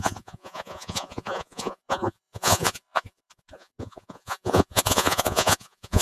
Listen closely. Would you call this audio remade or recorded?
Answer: remade